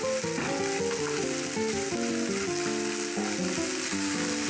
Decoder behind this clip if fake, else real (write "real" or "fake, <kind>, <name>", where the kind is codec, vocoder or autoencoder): real